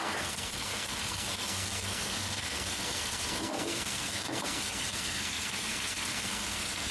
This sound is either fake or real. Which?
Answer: fake